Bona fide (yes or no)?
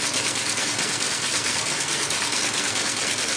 no